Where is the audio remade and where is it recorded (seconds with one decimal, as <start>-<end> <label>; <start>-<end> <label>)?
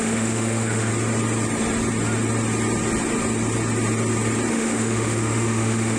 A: 0.0-0.9 remade; 0.9-4.5 recorded; 4.5-6.0 remade